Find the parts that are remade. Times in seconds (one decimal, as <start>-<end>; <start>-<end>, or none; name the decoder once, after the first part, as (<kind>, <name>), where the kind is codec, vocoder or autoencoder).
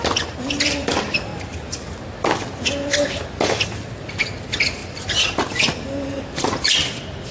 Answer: 4.8-5.4 (vocoder, BigVGAN v2)